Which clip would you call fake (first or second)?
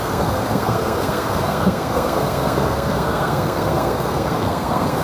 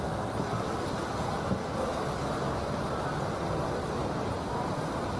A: first